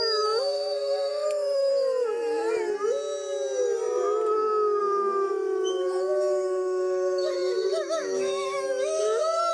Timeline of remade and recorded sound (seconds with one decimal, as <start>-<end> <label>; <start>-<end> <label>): 0.0-1.7 remade; 1.7-4.8 recorded; 4.8-9.5 remade